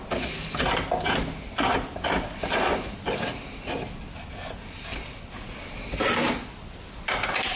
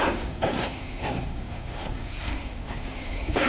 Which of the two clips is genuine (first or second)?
first